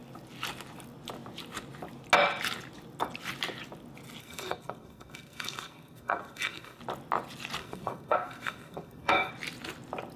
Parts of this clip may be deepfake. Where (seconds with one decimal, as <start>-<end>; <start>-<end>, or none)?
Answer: 4.2-6.8; 7.6-9.3